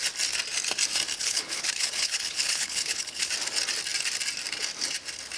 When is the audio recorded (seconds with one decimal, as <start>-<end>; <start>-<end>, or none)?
0.0-1.1; 3.3-5.4